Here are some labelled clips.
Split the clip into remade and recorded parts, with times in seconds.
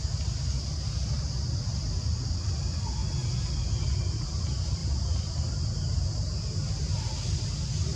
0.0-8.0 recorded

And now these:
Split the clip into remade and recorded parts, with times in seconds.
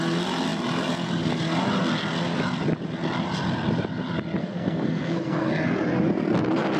0.0-4.4 recorded; 4.4-5.5 remade; 5.5-6.8 recorded